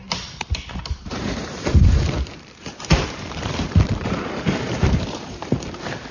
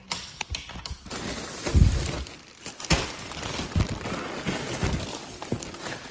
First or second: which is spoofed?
first